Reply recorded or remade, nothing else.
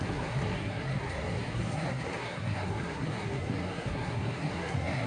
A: remade